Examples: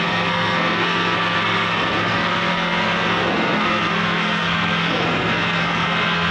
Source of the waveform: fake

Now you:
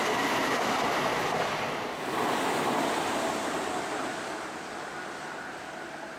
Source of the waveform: real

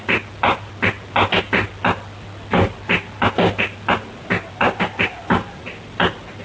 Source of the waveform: real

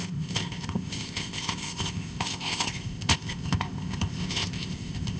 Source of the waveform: fake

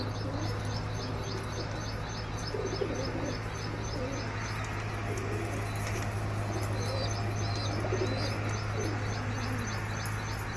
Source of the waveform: real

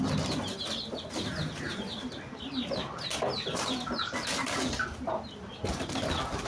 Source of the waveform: real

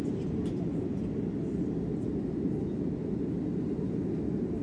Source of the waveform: real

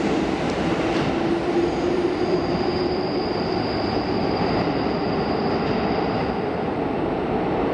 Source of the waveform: fake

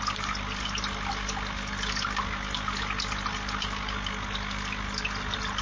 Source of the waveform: real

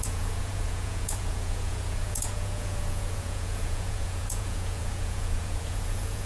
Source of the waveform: fake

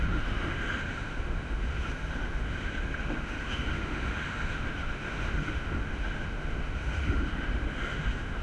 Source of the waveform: fake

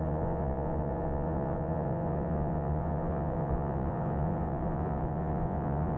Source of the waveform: fake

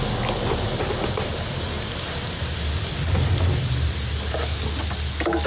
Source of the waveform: real